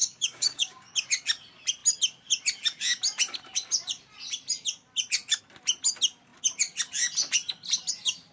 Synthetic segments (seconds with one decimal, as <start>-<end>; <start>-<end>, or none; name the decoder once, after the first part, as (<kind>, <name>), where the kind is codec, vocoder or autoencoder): 0.0-0.9 (codec, DAC)